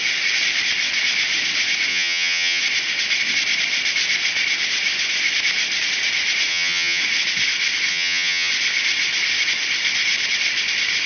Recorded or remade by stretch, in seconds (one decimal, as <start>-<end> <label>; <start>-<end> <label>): 0.0-1.9 recorded; 1.9-2.6 remade; 2.6-6.5 recorded; 6.5-7.0 remade; 7.0-7.9 recorded; 7.9-8.5 remade; 8.5-11.1 recorded